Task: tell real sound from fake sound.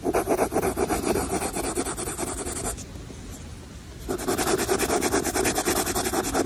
real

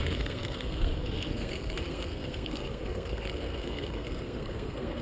fake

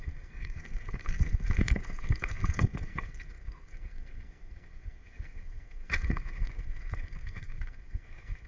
fake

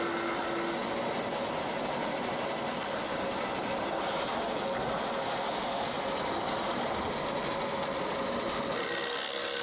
real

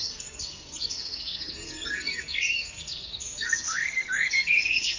fake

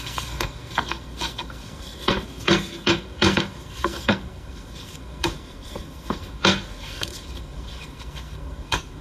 fake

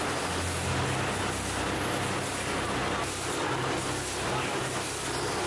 real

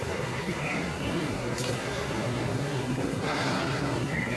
fake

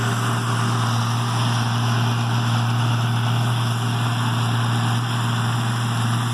real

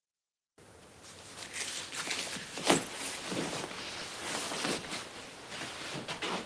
real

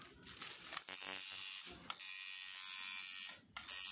real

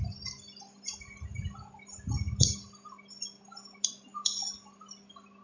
real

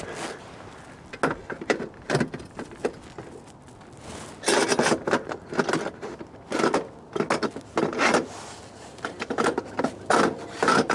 real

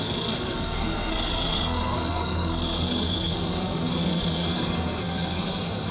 fake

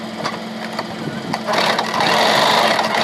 real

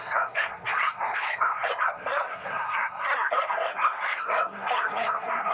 fake